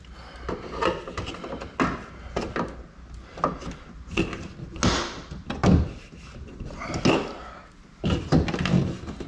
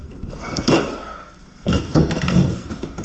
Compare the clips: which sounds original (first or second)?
first